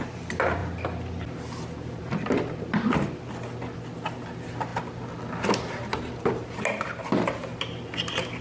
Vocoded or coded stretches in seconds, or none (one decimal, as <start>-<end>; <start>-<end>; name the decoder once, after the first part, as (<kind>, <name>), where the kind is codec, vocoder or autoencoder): none